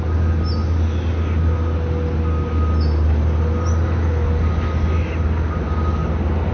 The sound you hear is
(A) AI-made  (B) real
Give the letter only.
B